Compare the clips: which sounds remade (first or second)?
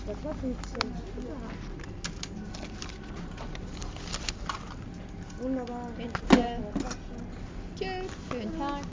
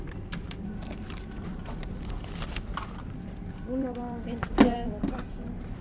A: second